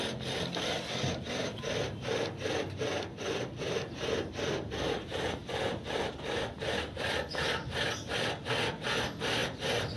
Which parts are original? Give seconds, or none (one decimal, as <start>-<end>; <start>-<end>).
0.0-9.4